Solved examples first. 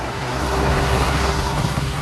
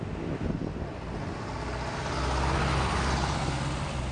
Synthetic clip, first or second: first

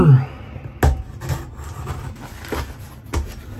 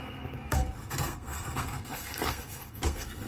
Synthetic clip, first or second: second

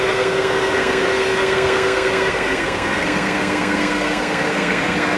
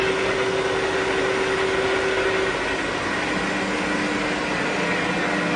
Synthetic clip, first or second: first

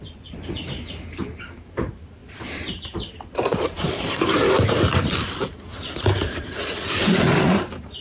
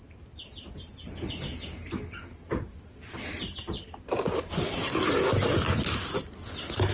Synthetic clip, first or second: first